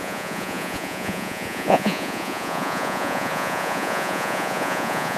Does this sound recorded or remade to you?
remade